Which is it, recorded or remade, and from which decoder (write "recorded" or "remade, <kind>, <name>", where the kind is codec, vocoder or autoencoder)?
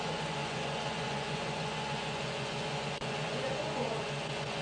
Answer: remade, vocoder, Vocos